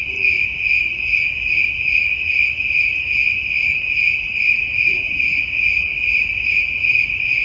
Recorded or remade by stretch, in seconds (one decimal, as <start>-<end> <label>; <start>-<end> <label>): 0.0-0.4 remade; 0.4-1.7 recorded; 1.7-5.9 remade; 5.9-6.6 recorded; 6.6-7.4 remade